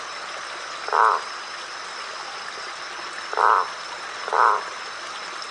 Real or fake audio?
real